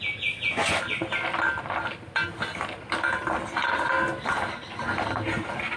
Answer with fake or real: real